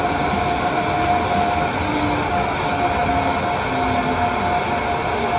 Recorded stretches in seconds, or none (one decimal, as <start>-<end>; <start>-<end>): 0.0-5.4